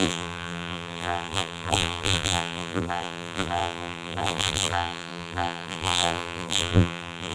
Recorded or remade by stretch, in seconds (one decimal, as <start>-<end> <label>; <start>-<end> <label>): 0.0-7.3 remade